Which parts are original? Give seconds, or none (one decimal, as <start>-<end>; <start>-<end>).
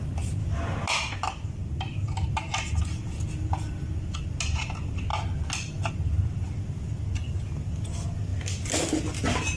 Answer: 0.0-9.6